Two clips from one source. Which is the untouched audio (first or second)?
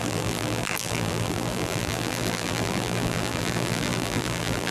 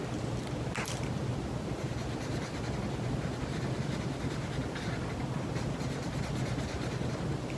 second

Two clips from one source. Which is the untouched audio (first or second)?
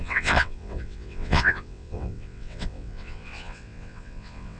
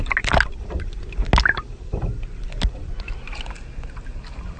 second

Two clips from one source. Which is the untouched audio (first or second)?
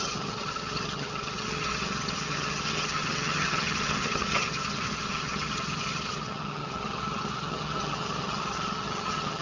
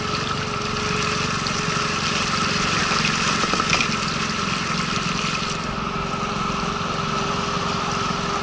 second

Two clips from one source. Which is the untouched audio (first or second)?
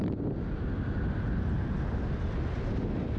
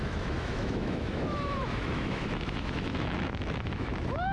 first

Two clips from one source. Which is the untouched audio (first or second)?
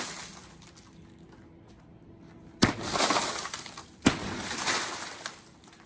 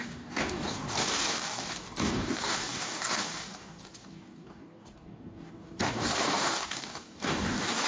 first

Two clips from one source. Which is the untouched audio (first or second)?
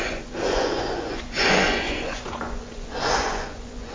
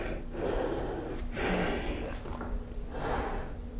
second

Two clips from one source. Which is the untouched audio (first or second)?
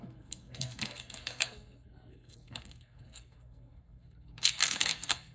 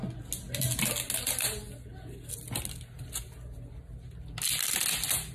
second